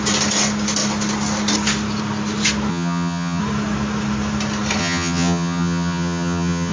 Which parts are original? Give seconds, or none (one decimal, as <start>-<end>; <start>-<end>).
0.0-2.7; 3.4-4.8